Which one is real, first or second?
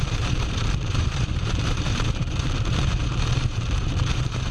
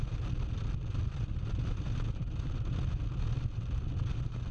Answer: second